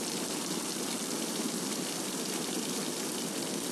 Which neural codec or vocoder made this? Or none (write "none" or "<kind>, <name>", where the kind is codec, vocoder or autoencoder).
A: none